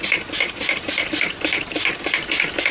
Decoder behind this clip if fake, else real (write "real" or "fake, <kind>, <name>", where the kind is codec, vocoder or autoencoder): real